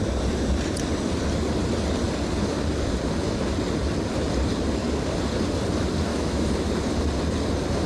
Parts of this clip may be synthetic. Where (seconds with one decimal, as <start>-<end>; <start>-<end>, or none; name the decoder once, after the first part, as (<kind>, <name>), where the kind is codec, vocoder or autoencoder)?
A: 6.1-6.7 (autoencoder, DAC-VAE)